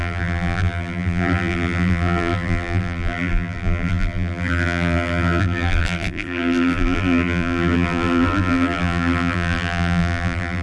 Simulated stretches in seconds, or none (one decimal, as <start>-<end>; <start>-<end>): 0.0-10.6